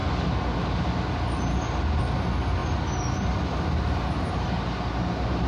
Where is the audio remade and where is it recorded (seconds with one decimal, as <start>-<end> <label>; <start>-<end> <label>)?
0.0-5.5 recorded